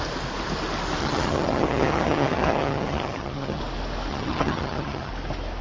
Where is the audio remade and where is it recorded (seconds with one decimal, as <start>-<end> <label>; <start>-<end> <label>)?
0.0-1.0 recorded; 1.0-3.6 remade; 3.6-4.1 recorded; 4.1-5.1 remade; 5.1-5.6 recorded